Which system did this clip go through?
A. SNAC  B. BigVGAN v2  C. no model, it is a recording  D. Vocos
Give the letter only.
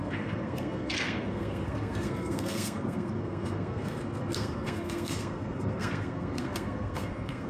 A